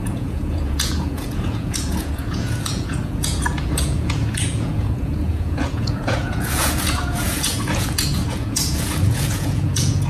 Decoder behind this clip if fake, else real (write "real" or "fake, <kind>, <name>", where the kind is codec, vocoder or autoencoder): fake, vocoder, Vocos